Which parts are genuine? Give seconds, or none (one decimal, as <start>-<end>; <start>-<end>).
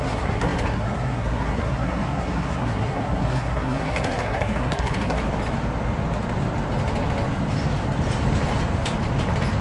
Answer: 5.2-9.6